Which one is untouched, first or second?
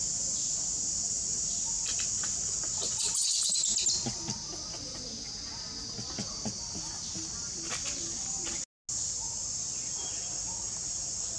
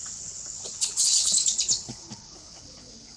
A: first